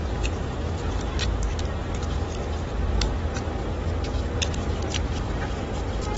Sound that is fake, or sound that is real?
real